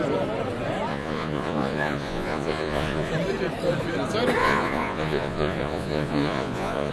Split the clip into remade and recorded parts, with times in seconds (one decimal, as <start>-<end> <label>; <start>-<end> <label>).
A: 0.0-0.9 recorded; 0.9-3.1 remade; 3.1-4.4 recorded; 4.4-6.9 remade